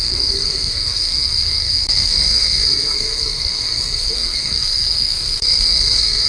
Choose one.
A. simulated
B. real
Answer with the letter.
A